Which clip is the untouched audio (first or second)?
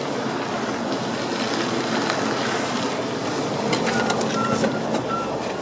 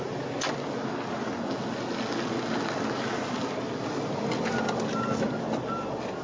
second